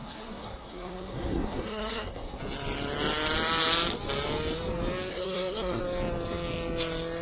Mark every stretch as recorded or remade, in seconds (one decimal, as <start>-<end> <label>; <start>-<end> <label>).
0.0-2.4 remade; 2.4-5.1 recorded; 5.1-5.8 remade; 5.8-7.2 recorded